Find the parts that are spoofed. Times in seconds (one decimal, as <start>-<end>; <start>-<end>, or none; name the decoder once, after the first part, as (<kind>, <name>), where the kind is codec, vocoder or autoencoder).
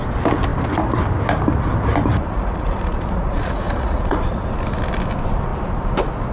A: 2.1-4.4 (vocoder, Vocos)